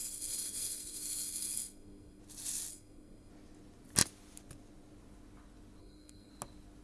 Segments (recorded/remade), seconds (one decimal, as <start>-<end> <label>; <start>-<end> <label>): 0.0-2.2 remade; 2.2-2.7 recorded; 2.7-3.3 remade; 3.3-5.8 recorded; 5.8-6.3 remade; 6.3-6.8 recorded